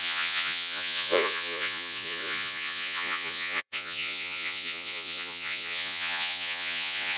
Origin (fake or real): fake